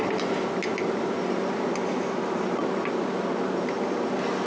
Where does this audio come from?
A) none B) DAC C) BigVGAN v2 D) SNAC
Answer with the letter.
A